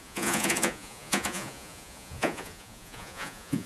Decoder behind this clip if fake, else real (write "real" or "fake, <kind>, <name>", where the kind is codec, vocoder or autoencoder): fake, vocoder, Vocos